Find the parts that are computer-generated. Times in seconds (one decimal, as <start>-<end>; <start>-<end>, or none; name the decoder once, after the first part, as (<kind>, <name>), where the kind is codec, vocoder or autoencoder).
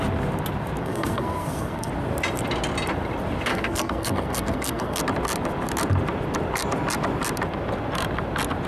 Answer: 0.8-1.9 (codec, SNAC); 3.5-5.0